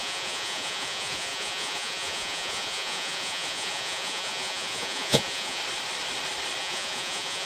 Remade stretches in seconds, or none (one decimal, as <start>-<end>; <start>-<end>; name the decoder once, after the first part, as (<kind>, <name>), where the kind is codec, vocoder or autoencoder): 0.0-5.6 (vocoder, Vocos); 6.6-7.5